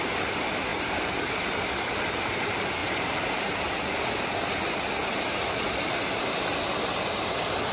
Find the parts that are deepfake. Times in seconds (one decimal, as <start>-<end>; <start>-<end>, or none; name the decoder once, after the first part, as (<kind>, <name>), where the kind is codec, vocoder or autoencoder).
2.8-3.7 (vocoder, BigVGAN v2); 5.0-6.2